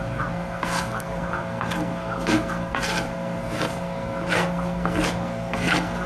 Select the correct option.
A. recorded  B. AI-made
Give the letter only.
B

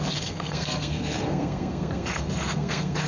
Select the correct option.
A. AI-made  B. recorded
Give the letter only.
A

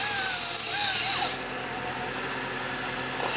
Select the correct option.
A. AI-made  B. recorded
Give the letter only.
B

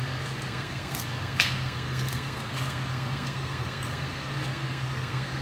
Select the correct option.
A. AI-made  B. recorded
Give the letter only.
A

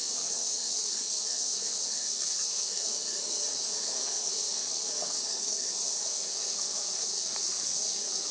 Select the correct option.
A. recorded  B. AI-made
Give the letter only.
B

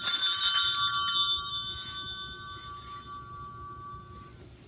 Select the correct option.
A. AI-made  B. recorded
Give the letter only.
B